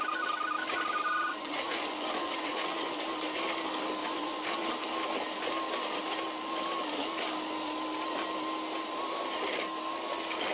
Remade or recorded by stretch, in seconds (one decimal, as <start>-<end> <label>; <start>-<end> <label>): 0.0-1.3 recorded; 1.3-3.0 remade; 3.0-4.0 recorded; 4.0-4.7 remade; 4.7-10.5 recorded